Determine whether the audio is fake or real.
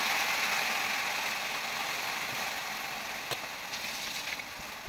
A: real